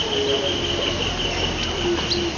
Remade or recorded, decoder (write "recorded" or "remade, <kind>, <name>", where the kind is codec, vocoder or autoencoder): recorded